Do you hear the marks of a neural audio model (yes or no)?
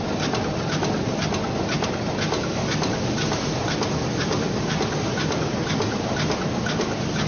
no